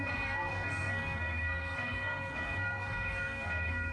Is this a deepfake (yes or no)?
yes